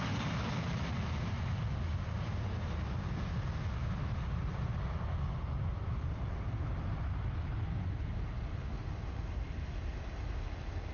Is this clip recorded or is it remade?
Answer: recorded